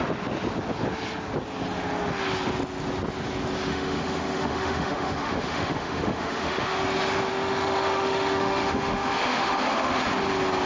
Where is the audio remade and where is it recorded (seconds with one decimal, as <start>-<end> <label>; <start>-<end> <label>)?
0.0-3.7 recorded; 3.7-6.8 remade; 6.8-7.3 recorded; 7.3-10.0 remade; 10.0-10.7 recorded